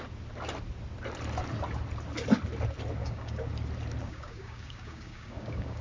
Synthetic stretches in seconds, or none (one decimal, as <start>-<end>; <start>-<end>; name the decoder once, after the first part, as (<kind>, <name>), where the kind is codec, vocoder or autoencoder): 3.0-3.5 (codec, DAC); 4.0-5.8